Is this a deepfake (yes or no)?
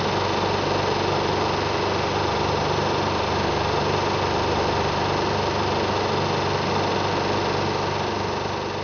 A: no